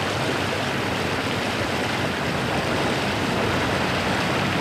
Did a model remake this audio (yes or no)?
no